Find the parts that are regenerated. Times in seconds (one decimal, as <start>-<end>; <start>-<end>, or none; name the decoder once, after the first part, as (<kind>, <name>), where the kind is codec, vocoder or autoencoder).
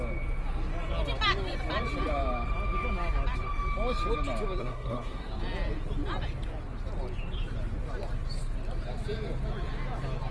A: 4.6-5.3 (codec, SNAC)